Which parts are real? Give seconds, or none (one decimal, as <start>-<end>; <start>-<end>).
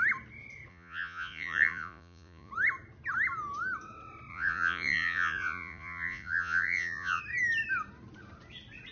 0.0-0.7; 2.5-4.3; 7.2-8.9